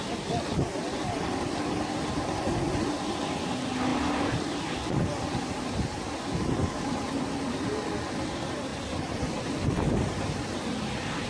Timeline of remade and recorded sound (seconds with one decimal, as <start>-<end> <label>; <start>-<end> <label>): 0.0-11.3 recorded